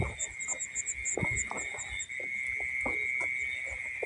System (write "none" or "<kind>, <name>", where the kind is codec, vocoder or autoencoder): none